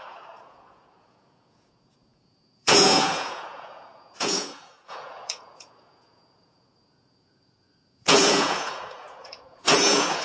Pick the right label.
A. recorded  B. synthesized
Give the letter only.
B